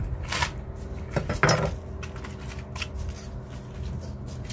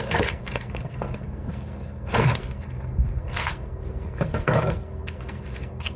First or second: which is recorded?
first